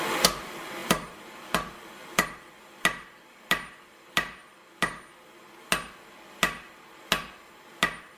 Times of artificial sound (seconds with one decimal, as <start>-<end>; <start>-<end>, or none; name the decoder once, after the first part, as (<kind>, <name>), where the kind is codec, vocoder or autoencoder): none